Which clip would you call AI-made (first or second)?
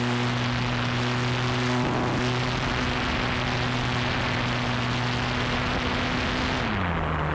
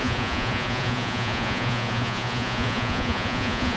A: second